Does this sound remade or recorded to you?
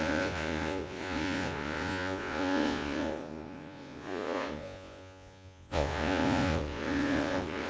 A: remade